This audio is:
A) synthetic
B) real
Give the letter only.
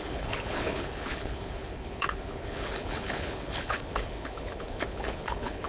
A